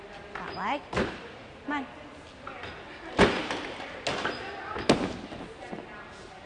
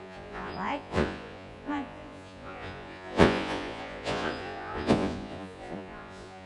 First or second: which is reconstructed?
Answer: second